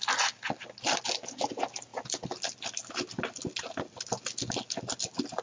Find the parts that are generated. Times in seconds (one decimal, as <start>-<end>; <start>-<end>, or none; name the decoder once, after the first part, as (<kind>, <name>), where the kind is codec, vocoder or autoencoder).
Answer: none